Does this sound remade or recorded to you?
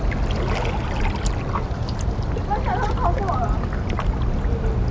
recorded